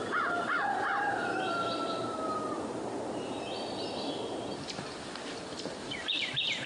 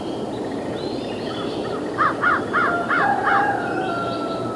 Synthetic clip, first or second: first